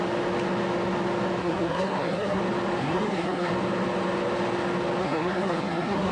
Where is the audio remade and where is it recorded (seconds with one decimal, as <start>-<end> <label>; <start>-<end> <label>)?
0.0-1.4 recorded; 1.4-2.4 remade; 2.4-2.8 recorded; 2.8-3.5 remade; 3.5-5.0 recorded; 5.0-6.1 remade